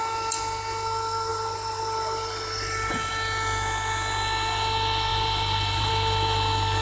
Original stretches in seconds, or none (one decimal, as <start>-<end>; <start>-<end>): 0.0-1.3; 3.1-5.1; 5.9-6.8